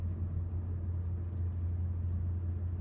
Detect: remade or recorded recorded